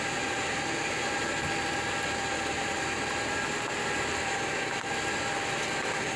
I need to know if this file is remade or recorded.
recorded